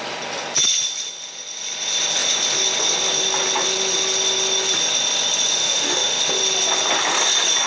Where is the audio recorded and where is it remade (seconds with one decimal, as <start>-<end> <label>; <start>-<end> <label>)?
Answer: 0.0-5.6 recorded; 5.6-6.2 remade; 6.2-7.7 recorded